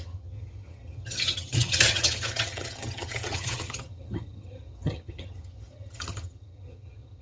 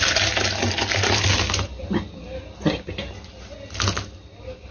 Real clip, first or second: second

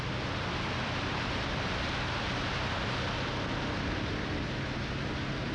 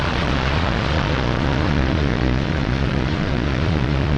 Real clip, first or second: first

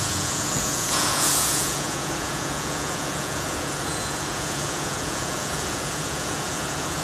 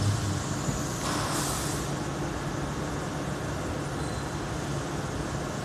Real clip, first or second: second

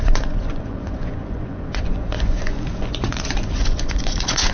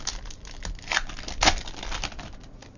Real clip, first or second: second